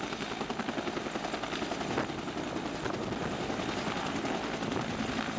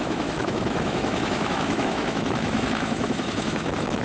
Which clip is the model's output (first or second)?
second